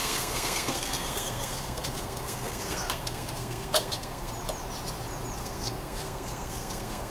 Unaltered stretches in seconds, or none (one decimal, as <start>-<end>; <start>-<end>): 4.3-5.4